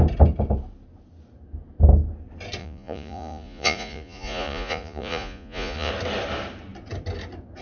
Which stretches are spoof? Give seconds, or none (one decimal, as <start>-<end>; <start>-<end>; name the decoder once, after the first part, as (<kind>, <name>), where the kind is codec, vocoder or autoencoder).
2.6-5.9 (vocoder, Vocos)